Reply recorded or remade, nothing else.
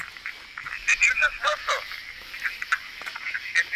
recorded